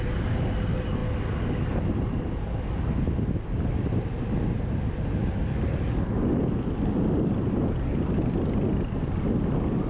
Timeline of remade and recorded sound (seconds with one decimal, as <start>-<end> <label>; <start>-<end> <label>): 0.0-9.9 recorded